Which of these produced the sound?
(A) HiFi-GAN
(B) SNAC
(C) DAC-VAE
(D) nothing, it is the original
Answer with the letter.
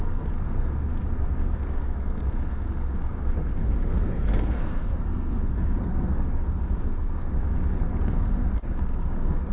B